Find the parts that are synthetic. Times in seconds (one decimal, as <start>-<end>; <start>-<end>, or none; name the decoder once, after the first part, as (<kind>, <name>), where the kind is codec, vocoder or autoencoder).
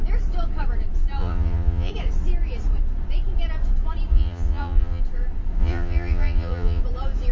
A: 1.2-1.9 (vocoder, Vocos); 4.1-5.0; 5.6-6.8